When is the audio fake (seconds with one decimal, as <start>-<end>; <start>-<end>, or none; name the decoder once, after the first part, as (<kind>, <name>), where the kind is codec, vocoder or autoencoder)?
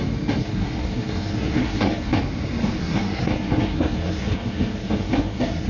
0.4-2.2 (codec, SNAC); 2.8-5.7